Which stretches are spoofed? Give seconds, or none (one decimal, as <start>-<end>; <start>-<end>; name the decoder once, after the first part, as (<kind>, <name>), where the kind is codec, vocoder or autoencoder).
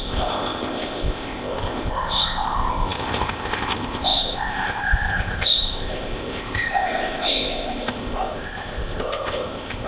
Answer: 0.0-9.9 (codec, ZipCodec)